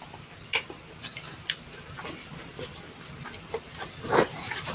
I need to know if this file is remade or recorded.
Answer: recorded